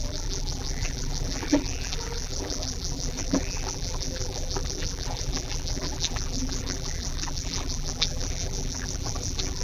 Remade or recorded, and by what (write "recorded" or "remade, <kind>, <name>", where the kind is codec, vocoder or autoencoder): remade, vocoder, BigVGAN v2